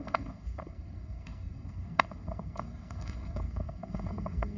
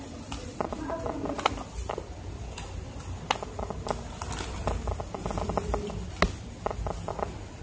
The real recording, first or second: second